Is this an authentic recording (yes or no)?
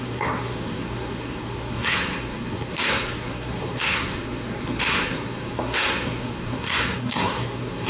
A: no